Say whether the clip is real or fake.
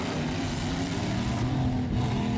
real